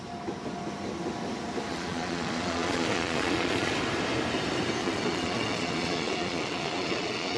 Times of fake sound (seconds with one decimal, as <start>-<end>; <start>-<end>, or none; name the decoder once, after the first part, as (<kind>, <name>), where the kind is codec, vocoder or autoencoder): 1.7-3.7 (vocoder, Vocos); 4.8-7.4